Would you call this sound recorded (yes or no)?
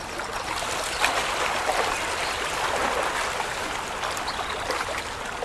yes